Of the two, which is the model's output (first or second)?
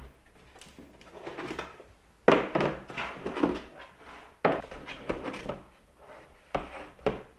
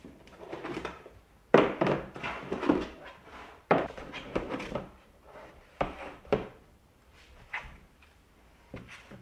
second